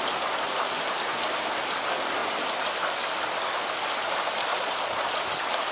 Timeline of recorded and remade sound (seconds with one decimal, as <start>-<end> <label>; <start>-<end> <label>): 0.0-4.5 recorded; 4.5-5.1 remade; 5.1-5.7 recorded